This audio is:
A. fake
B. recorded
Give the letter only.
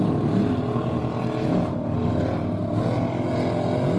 B